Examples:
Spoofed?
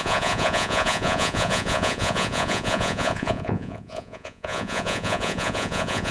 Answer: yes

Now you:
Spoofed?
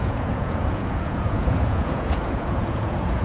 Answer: yes